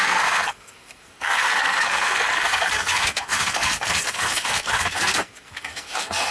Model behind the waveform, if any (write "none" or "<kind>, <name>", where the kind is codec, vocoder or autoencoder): codec, SNAC